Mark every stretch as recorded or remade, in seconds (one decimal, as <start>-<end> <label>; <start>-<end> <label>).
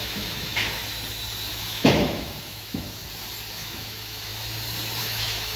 0.0-0.8 remade; 0.8-1.5 recorded; 1.5-3.0 remade; 3.0-3.5 recorded; 3.5-4.3 remade; 4.3-5.0 recorded; 5.0-5.6 remade